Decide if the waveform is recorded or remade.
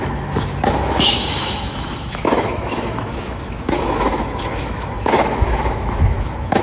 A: remade